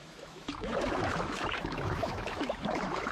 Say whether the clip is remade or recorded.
remade